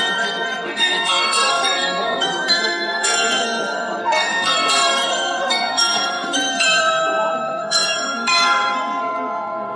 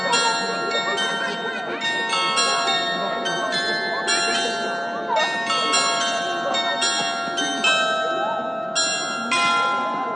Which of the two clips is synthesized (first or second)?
first